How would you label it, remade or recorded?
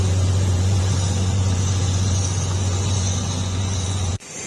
remade